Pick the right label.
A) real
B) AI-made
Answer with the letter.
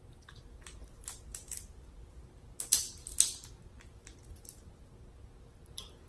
A